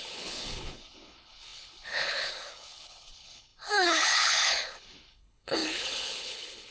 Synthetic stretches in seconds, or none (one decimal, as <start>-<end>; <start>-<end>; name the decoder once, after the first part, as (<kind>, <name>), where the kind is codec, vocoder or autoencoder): 0.0-6.7 (codec, HILCodec)